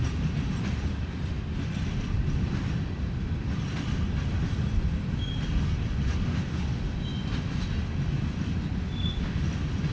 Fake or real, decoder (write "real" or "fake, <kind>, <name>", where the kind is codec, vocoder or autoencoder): real